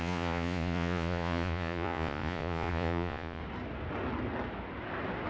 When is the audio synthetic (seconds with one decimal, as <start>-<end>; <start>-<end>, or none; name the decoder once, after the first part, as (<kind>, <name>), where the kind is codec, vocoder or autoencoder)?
0.0-3.4 (vocoder, Vocos)

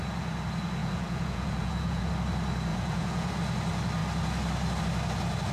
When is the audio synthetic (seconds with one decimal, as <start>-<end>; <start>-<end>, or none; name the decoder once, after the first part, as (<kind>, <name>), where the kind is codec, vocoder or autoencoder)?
0.8-2.1 (vocoder, Vocos); 2.7-3.3

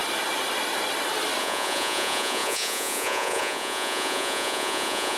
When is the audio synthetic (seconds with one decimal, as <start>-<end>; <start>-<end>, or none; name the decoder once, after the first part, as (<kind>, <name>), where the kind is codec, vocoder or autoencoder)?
1.4-5.2 (vocoder, Vocos)

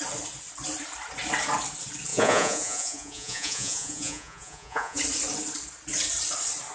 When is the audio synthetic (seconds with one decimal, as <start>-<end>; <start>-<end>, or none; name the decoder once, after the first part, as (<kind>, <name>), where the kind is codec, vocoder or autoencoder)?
2.1-5.0 (vocoder, Vocos)

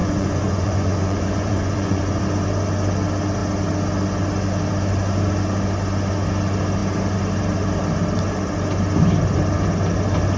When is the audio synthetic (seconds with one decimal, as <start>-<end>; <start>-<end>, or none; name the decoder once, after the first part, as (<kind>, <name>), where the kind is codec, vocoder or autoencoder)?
0.0-2.2 (vocoder, Vocos)

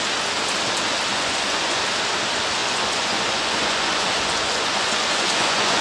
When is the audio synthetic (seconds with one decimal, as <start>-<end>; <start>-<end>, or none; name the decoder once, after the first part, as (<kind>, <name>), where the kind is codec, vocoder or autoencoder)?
1.1-1.8 (vocoder, Vocos); 2.6-5.8

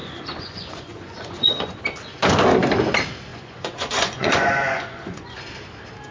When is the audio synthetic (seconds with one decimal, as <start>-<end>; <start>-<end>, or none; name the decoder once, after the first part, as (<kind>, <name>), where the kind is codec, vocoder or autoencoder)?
0.0-1.8 (vocoder, Vocos); 3.3-5.4